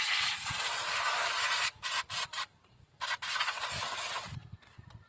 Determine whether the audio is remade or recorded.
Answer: remade